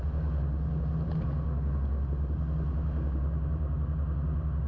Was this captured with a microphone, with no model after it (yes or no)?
yes